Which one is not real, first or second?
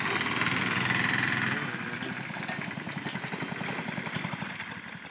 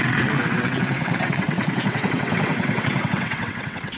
second